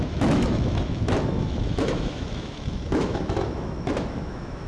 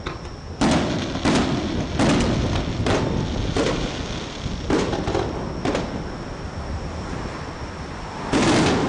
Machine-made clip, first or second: first